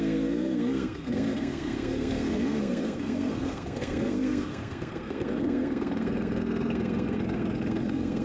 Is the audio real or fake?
fake